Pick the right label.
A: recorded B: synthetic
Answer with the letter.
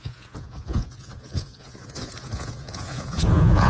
B